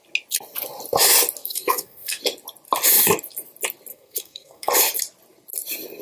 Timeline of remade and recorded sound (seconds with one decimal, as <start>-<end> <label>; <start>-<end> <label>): 0.0-1.4 recorded; 1.4-2.2 remade; 2.2-3.9 recorded; 3.9-4.7 remade; 4.7-6.0 recorded